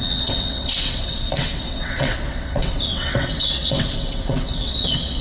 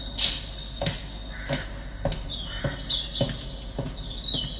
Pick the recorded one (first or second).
second